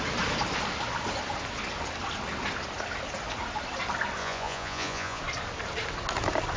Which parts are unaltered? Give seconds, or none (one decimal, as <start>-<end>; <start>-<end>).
0.0-4.2; 5.2-6.6

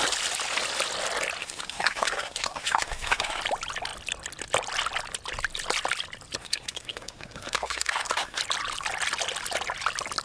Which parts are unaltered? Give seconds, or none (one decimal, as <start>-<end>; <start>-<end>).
0.0-1.4; 3.4-6.4; 8.4-10.2

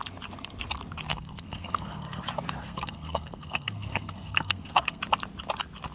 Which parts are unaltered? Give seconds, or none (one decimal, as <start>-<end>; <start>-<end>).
0.0-1.1; 2.2-2.6; 5.0-5.9

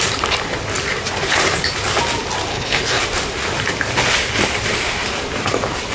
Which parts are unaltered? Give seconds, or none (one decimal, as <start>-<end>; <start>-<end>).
0.0-2.5; 3.0-5.9

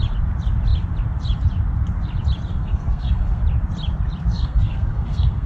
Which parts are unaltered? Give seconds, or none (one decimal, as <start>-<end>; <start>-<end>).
0.0-2.5; 3.4-4.3